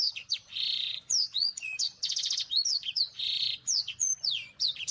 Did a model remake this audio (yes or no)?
yes